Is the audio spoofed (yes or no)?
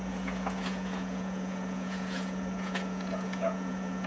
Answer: yes